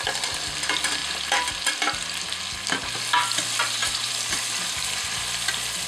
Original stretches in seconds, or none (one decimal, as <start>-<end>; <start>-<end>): 0.0-3.8; 4.3-5.9